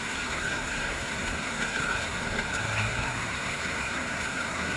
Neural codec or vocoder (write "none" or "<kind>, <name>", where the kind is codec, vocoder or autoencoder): codec, SNAC